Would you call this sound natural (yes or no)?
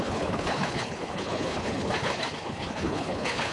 no